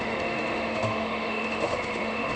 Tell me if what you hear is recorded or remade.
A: remade